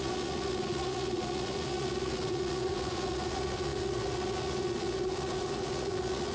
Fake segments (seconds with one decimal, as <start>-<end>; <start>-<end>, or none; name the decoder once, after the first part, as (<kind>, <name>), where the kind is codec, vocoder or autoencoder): 0.0-6.3 (vocoder, Vocos)

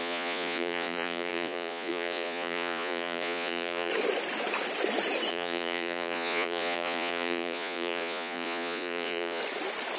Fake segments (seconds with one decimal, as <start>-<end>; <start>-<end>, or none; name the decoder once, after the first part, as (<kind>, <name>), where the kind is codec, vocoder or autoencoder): 0.0-3.9 (vocoder, Vocos); 5.3-9.4

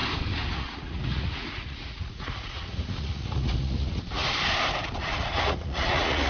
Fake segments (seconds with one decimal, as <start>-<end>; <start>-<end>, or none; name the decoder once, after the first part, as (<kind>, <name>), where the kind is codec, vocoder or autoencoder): 0.5-4.2 (vocoder, Vocos); 5.0-6.3

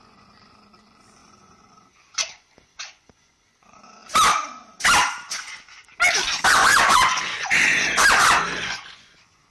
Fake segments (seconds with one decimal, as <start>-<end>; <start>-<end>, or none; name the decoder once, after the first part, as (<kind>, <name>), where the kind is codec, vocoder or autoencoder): 0.0-4.0 (vocoder, Vocos); 5.3-5.8; 6.5-9.5

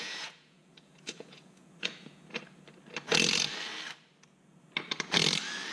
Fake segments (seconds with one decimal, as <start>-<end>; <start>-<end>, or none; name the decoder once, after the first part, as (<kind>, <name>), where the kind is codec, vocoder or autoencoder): 0.0-2.3 (vocoder, Vocos)

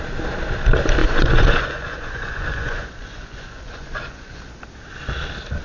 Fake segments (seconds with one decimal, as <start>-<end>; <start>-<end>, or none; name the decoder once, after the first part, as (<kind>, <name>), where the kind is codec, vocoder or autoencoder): 1.0-4.4 (vocoder, Vocos)

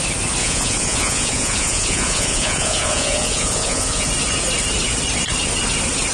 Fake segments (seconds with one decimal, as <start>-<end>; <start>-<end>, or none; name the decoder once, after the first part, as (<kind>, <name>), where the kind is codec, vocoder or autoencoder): 0.4-4.1 (vocoder, Vocos)